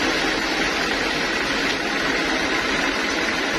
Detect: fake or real real